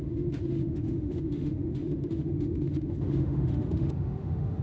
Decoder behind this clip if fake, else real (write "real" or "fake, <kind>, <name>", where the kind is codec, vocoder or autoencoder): fake, autoencoder, DAC-VAE